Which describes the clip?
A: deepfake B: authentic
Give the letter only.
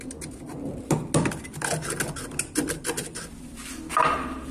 B